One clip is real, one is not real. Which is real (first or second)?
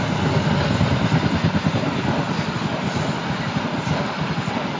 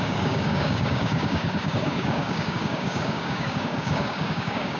first